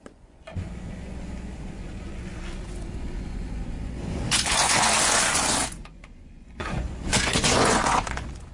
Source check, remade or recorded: remade